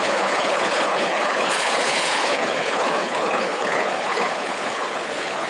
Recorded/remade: remade